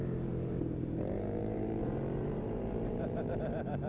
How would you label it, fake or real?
fake